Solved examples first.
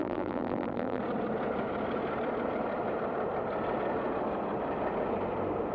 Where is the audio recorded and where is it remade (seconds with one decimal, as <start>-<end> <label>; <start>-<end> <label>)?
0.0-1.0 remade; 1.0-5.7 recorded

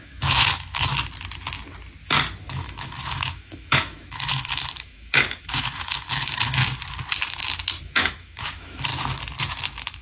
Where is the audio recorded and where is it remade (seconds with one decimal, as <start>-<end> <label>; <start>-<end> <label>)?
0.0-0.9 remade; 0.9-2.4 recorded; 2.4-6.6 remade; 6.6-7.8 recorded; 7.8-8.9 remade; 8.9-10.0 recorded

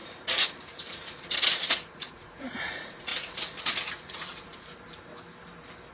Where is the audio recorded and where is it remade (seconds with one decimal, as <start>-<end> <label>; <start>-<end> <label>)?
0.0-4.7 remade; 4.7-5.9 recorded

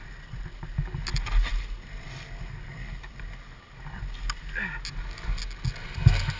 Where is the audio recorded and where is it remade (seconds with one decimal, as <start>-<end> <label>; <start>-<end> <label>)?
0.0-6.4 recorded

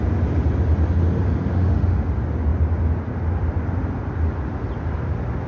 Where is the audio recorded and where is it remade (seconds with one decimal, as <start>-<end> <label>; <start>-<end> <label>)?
0.0-1.5 recorded; 1.5-2.1 remade; 2.1-5.5 recorded

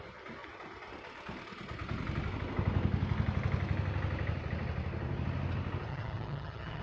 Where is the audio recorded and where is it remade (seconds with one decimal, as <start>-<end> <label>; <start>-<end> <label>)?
0.0-5.9 recorded; 5.9-6.8 remade